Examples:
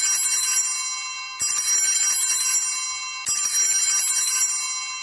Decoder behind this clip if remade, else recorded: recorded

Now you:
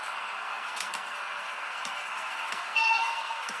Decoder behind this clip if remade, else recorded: remade, codec, SNAC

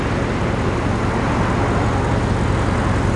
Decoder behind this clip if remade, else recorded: recorded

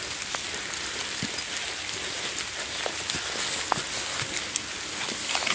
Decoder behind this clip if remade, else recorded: recorded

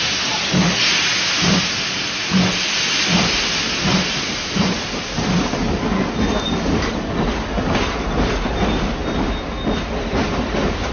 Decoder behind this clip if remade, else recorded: recorded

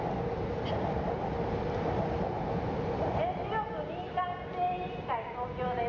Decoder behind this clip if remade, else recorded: recorded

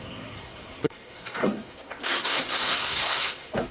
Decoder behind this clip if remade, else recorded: remade, codec, SNAC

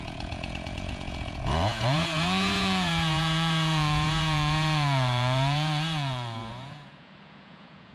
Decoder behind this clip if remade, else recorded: remade, vocoder, Vocos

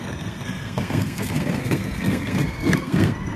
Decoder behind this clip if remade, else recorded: remade, codec, SNAC